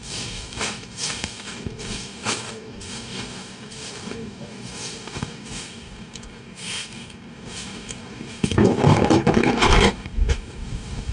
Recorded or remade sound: remade